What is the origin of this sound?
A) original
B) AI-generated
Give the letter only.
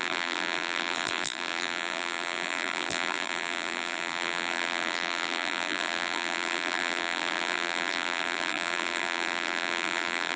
B